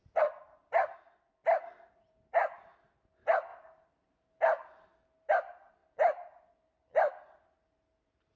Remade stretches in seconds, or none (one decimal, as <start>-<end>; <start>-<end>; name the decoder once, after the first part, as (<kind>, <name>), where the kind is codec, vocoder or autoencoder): 1.4-2.1 (vocoder, BigVGAN v2)